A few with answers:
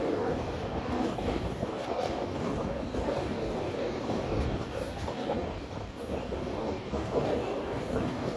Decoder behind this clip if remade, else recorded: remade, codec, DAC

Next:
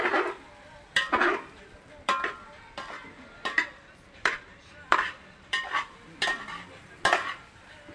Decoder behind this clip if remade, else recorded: remade, vocoder, BigVGAN v2